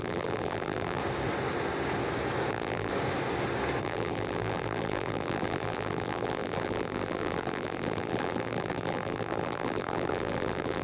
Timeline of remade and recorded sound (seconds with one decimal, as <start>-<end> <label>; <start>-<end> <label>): 0.0-1.0 remade; 1.0-2.5 recorded; 2.5-2.9 remade; 2.9-3.8 recorded; 3.8-10.8 remade